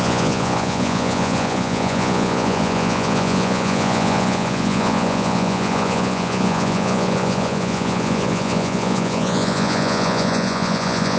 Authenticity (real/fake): fake